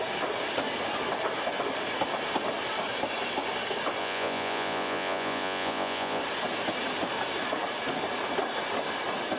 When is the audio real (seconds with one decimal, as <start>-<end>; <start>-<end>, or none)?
0.0-4.0; 6.2-9.4